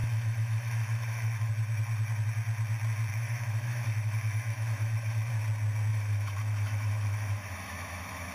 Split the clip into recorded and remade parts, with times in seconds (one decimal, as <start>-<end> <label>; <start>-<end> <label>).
0.0-1.5 remade; 1.5-3.1 recorded; 3.1-5.3 remade; 5.3-5.9 recorded; 5.9-8.3 remade